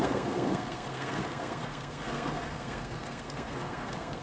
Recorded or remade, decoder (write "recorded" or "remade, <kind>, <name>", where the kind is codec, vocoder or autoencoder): remade, codec, SNAC